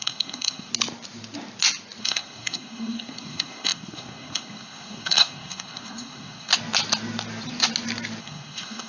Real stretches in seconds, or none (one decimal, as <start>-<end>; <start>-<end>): 0.7-2.0; 6.5-8.2